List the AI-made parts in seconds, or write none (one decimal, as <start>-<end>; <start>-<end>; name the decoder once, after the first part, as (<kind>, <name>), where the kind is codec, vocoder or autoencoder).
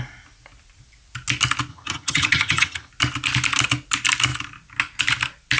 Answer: 1.7-2.9 (vocoder, HiFi-GAN)